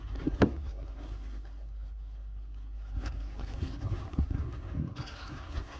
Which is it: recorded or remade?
remade